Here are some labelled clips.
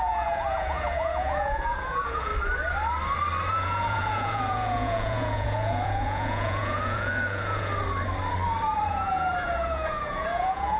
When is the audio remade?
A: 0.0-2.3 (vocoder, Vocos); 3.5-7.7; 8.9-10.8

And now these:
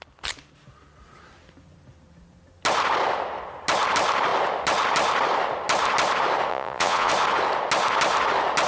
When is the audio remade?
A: 6.5-7.1 (vocoder, Vocos)

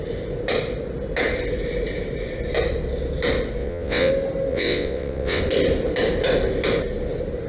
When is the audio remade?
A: 3.6-4.1 (vocoder, WaveNeXt); 4.5-5.4

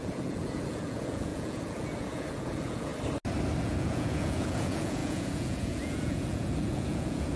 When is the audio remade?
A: 0.0-2.9 (vocoder, Vocos); 3.6-7.4

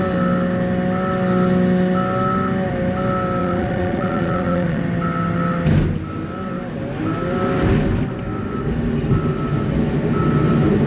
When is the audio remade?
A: 3.4-4.8 (vocoder, Vocos)